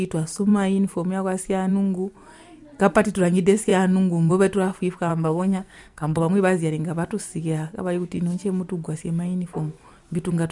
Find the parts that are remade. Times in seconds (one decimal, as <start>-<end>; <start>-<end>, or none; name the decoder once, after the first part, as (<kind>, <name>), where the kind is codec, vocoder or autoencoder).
5.1-6.2 (codec, SNAC)